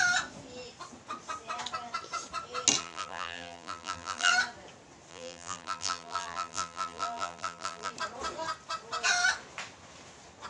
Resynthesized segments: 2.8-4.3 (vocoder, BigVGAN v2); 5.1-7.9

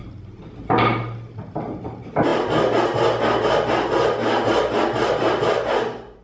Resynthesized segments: none

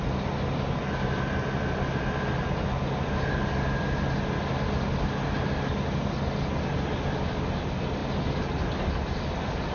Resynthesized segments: none

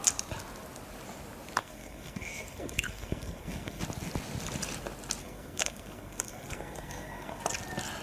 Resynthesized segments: 1.6-3.8 (codec, SNAC); 5.2-7.4